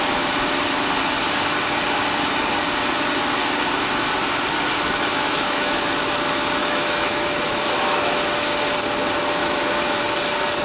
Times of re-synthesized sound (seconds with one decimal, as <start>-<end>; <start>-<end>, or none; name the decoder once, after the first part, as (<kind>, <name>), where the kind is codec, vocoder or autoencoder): 5.1-5.8 (autoencoder, DAC-VAE); 6.6-8.1; 9.4-10.0